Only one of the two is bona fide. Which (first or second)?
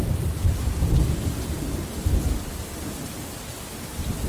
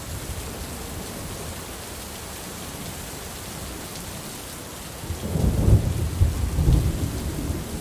second